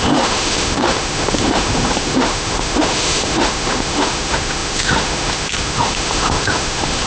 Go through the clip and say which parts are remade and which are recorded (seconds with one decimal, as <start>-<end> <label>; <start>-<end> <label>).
0.0-7.1 remade